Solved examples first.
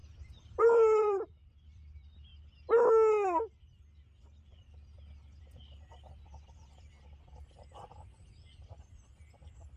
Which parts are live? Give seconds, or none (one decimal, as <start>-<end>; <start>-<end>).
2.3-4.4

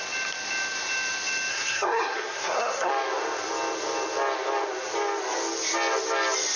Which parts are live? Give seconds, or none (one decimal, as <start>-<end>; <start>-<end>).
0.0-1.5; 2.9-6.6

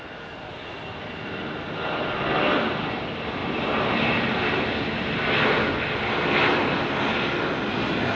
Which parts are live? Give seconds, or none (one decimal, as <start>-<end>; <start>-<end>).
0.0-3.4; 4.6-8.2

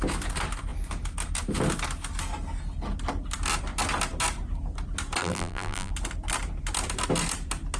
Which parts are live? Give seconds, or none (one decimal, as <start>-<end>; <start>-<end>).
0.0-5.2; 5.9-7.8

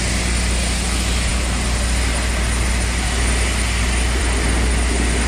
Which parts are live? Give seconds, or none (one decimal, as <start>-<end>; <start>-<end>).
0.0-5.3